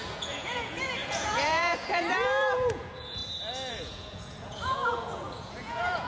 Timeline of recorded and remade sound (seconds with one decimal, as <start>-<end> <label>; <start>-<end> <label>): 0.0-3.2 remade; 3.2-3.7 recorded; 3.7-6.1 remade